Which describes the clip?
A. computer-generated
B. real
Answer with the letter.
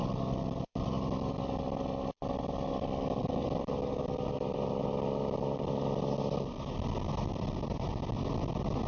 B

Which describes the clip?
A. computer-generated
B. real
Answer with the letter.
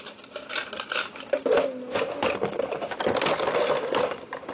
B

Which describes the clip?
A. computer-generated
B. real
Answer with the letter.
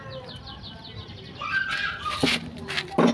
B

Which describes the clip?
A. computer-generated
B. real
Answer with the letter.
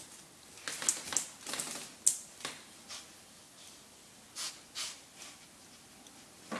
B